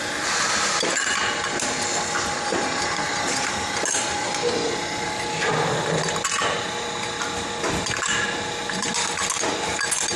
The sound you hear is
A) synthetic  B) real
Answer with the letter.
B